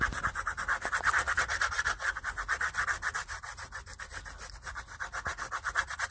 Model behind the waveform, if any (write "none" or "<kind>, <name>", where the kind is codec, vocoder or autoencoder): none